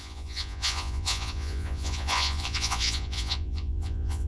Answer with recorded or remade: remade